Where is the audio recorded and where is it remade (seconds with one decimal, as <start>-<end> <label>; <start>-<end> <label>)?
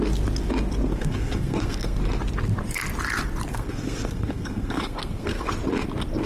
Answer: 0.0-0.9 recorded; 0.9-2.0 remade; 2.0-3.5 recorded; 3.5-5.5 remade; 5.5-6.3 recorded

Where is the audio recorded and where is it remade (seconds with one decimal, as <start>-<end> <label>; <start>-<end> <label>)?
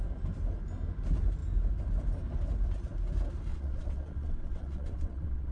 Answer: 0.0-3.5 recorded; 3.5-5.5 remade